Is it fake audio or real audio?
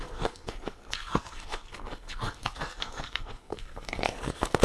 fake